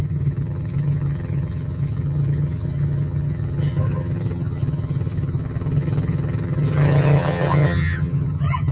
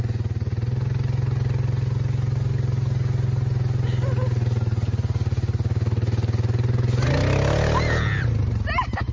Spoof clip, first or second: first